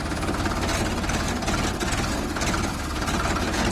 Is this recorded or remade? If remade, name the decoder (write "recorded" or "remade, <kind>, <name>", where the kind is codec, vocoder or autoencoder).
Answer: recorded